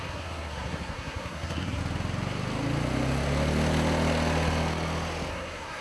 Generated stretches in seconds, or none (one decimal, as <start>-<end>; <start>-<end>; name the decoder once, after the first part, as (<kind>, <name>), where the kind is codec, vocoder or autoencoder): 0.0-1.8 (codec, SNAC); 5.3-5.8